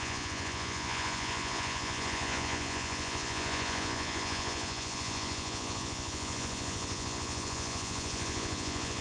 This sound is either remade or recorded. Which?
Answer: remade